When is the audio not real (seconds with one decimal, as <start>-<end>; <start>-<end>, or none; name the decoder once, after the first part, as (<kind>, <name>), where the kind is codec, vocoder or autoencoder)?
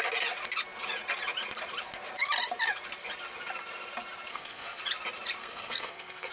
4.3-4.8 (codec, SNAC); 5.4-6.3